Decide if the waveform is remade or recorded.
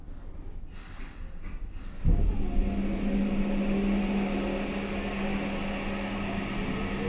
recorded